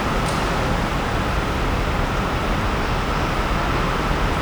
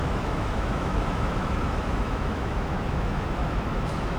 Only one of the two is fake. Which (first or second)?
second